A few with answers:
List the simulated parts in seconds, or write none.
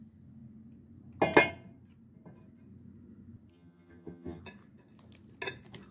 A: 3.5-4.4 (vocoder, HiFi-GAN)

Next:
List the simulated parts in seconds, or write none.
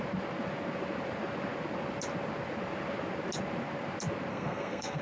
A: 4.3-5.0 (codec, SNAC)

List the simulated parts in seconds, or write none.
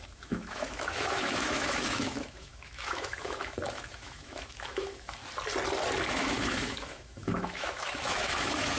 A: 0.0-5.2 (autoencoder, DAC-VAE); 6.1-8.8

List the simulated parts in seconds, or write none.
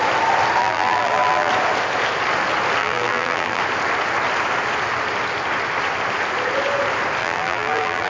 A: 0.6-1.5 (vocoder, BigVGAN v2); 2.8-3.6; 7.2-8.1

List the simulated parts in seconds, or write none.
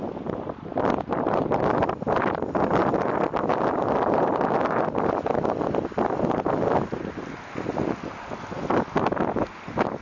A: none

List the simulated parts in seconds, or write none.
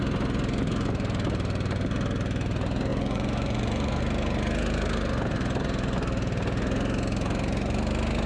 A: 2.9-4.0 (vocoder, Vocos)